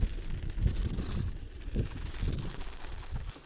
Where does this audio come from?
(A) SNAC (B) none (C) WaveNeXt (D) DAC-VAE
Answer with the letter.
B